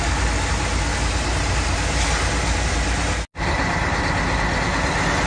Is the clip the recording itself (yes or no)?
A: yes